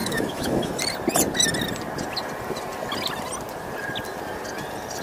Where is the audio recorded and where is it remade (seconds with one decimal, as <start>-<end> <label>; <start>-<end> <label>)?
0.0-0.8 remade; 0.8-5.0 recorded